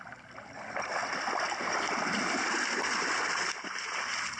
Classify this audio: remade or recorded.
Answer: recorded